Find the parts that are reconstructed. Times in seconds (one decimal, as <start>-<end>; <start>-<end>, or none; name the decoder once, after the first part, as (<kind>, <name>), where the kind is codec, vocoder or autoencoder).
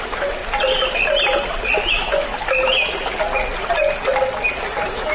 0.0-0.4 (autoencoder, DAC-VAE); 1.9-2.3; 4.6-5.1